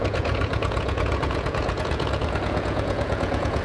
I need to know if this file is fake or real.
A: fake